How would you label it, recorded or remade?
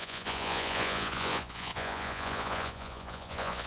remade